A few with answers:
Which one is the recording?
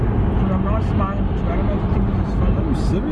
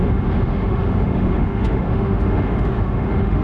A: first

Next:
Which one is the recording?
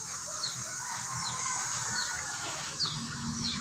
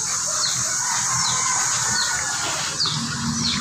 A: second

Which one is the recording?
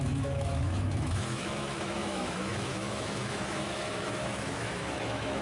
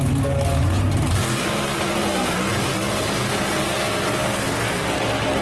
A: second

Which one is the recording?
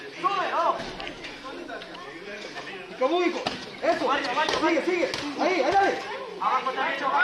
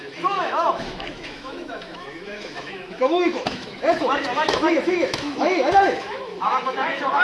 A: first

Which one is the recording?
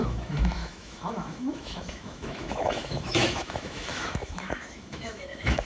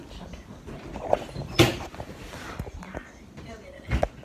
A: second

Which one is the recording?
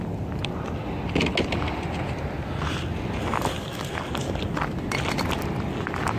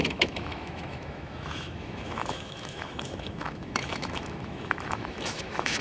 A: first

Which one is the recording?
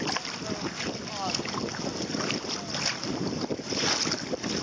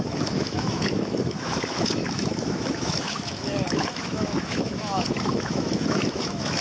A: first